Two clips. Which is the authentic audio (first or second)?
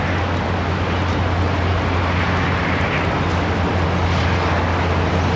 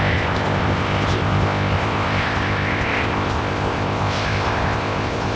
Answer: first